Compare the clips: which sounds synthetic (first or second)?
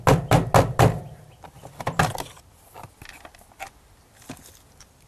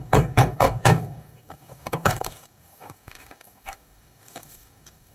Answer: second